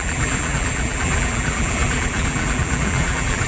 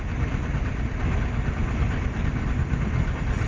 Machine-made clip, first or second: first